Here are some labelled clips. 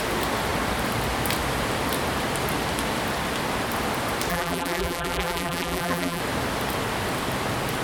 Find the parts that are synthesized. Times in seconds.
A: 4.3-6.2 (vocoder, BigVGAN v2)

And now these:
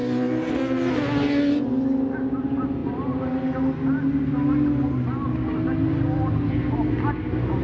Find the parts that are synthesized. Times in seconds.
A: none

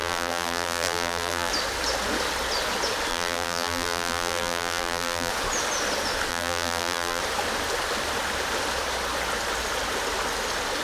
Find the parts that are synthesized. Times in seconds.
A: 0.0-1.5 (vocoder, BigVGAN v2); 3.1-5.3; 6.3-7.2

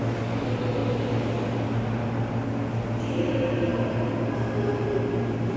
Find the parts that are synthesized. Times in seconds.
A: none